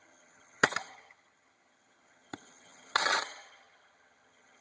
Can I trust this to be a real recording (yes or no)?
no